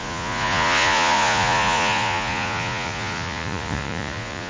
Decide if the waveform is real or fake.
fake